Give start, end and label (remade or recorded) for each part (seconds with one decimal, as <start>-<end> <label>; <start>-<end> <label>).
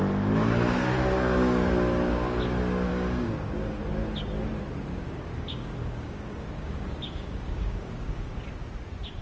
0.0-2.9 recorded; 2.9-3.5 remade; 3.5-4.9 recorded; 4.9-8.2 remade; 8.2-9.2 recorded